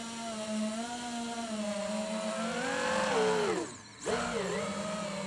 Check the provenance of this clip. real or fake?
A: real